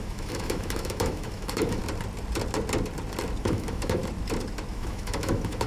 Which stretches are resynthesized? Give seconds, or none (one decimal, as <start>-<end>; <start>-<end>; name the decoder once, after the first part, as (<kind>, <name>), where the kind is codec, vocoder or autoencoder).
0.0-1.8 (autoencoder, DAC-VAE); 3.4-4.0; 4.7-5.7